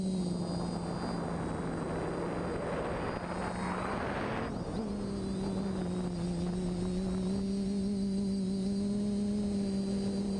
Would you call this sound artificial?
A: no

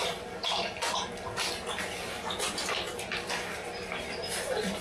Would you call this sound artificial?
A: no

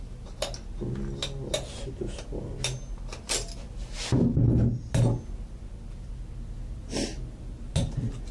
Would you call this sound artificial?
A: no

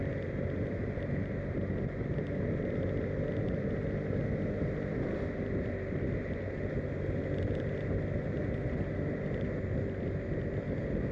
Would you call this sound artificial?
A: no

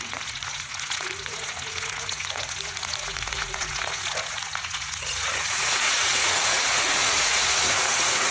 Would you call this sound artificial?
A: yes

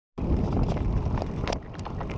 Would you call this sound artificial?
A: no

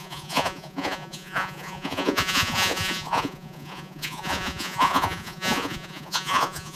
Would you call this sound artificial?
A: yes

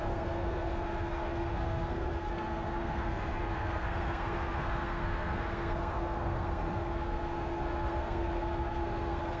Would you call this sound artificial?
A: yes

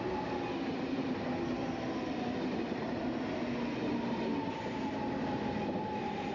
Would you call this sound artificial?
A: no